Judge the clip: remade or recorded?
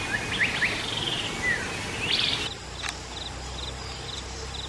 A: recorded